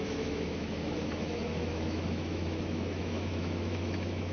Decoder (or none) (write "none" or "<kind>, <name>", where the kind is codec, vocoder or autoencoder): autoencoder, DAC-VAE